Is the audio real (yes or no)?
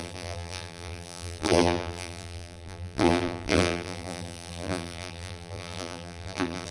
no